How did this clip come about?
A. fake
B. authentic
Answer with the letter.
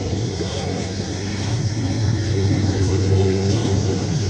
A